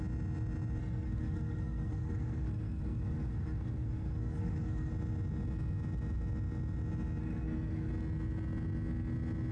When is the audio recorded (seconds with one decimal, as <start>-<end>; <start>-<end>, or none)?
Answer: 0.0-0.8; 4.9-7.2; 7.9-9.5